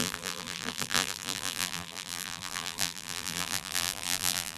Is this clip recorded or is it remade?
remade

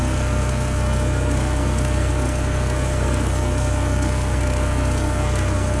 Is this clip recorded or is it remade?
remade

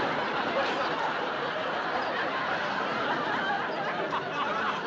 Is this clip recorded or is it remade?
recorded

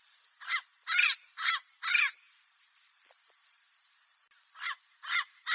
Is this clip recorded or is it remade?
recorded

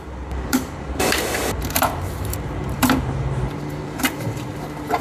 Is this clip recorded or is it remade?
remade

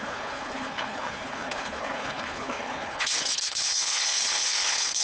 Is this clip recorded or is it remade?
remade